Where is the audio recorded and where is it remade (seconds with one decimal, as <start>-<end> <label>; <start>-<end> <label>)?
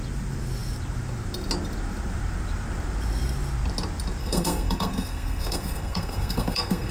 0.0-4.2 recorded; 4.2-6.9 remade